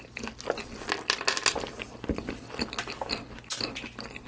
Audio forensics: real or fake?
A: real